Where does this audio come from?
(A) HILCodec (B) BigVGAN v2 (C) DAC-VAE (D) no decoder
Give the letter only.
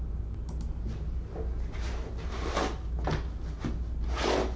D